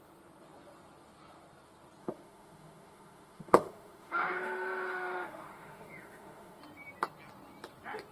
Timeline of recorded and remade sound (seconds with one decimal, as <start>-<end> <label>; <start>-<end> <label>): 0.0-2.0 recorded; 2.0-6.6 remade; 6.6-8.1 recorded